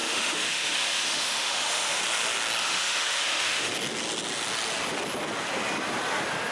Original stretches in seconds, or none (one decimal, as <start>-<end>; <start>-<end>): 2.0-2.6; 3.7-6.5

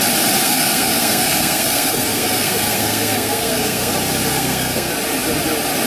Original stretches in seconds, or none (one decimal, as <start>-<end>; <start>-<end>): 0.0-0.4; 3.9-4.3; 4.9-5.9

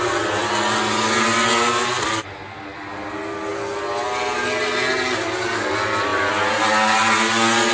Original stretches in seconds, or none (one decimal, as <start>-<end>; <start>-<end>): 0.0-6.1; 6.6-7.7